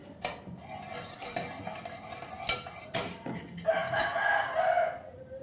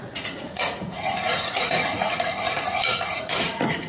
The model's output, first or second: second